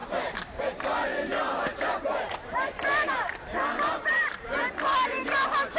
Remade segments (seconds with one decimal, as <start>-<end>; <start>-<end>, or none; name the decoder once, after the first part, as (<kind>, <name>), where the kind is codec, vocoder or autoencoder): 0.0-0.6 (vocoder, BigVGAN v2); 3.9-4.4